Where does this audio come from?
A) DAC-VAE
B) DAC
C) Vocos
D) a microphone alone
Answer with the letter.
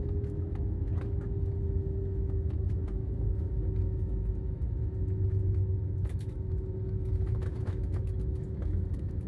A